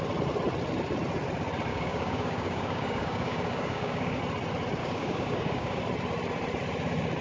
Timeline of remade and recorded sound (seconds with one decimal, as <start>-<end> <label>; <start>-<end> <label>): 0.0-1.7 recorded; 1.7-4.2 remade; 4.2-4.8 recorded; 4.8-5.8 remade; 5.8-7.2 recorded

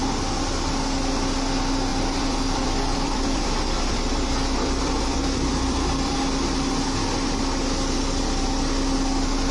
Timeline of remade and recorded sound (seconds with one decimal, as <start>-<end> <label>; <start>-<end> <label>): 0.0-1.9 recorded; 1.9-6.4 remade; 6.4-9.5 recorded

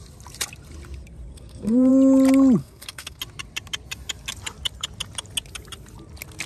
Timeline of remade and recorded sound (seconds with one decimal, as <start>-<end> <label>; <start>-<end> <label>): 0.0-1.3 recorded; 1.3-1.9 remade; 1.9-2.6 recorded; 2.6-3.2 remade; 3.2-6.5 recorded

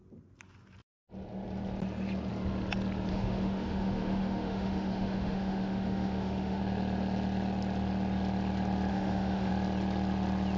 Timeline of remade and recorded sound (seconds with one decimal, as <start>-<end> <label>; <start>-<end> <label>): 0.0-3.1 recorded; 3.1-6.6 remade; 6.6-8.9 recorded; 8.9-9.5 remade; 9.5-10.6 recorded